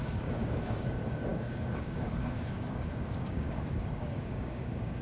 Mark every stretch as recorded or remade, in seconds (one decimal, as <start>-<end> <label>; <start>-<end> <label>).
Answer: 0.0-5.0 remade